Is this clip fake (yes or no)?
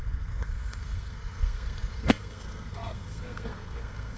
yes